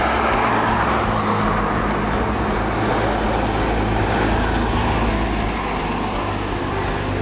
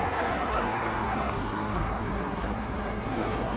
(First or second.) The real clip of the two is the first